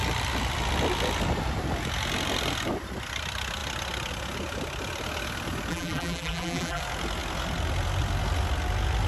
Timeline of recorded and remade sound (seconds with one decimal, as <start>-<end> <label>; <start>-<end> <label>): 0.0-5.7 recorded; 5.7-6.8 remade; 6.8-9.1 recorded